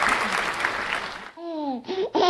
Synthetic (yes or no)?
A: no